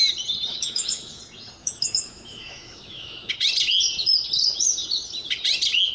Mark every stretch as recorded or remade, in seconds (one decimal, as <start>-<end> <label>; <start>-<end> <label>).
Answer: 0.0-0.5 recorded; 0.5-1.2 remade; 1.2-1.6 recorded; 1.6-3.3 remade; 3.3-5.9 recorded